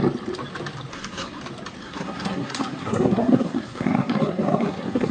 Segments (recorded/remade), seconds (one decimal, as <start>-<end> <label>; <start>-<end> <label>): 0.0-0.9 recorded; 0.9-1.4 remade; 1.4-1.8 recorded; 1.8-5.1 remade